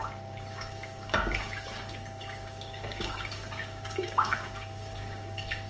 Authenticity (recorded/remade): remade